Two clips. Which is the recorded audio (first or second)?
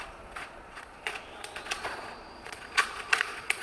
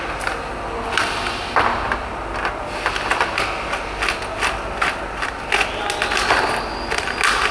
second